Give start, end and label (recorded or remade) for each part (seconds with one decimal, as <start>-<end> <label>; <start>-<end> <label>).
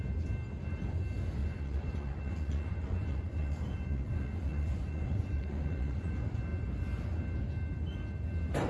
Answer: 0.0-1.4 recorded; 1.4-6.1 remade; 6.1-8.7 recorded